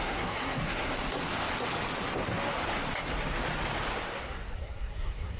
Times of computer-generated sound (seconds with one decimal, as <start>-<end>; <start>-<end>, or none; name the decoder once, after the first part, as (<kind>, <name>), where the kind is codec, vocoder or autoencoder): 0.0-1.0 (codec, SNAC); 4.2-5.4